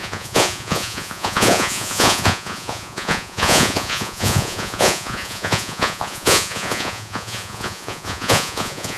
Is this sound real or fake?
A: fake